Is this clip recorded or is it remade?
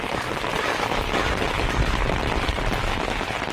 recorded